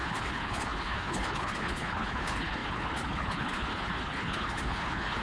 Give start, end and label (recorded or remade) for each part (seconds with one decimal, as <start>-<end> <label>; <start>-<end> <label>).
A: 0.0-5.2 remade